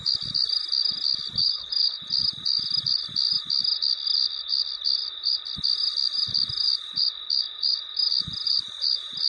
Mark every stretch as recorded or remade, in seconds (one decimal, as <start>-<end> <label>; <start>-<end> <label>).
0.0-1.4 recorded; 1.4-2.0 remade; 2.0-9.3 recorded